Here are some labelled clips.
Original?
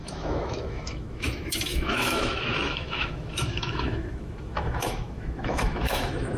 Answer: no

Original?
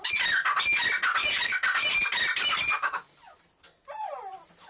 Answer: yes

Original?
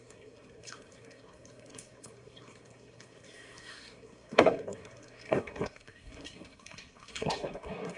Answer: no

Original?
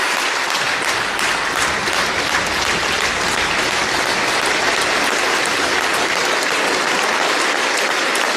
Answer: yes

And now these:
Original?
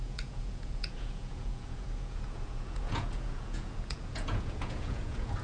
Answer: no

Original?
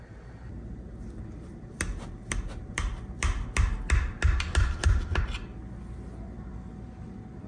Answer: yes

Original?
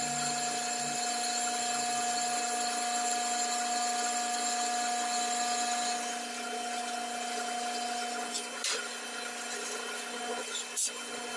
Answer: yes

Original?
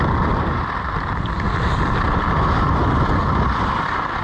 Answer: yes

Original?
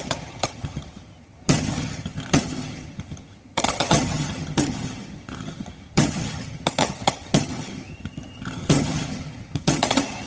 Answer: no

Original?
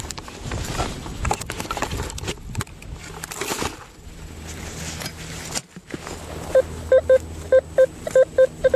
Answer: yes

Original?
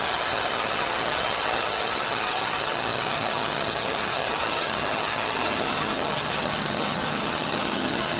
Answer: no